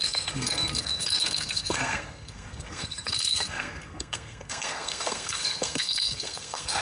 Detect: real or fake fake